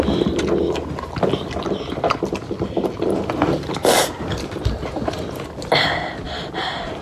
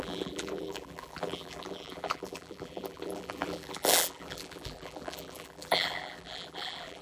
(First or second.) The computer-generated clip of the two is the second